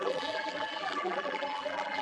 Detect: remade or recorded remade